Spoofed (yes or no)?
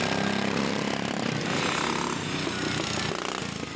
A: no